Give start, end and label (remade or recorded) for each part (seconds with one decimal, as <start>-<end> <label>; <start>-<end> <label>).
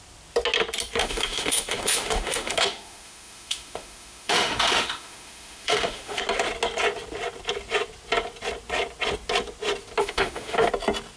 0.0-1.0 recorded; 1.0-6.2 remade; 6.2-10.0 recorded; 10.0-10.7 remade; 10.7-11.2 recorded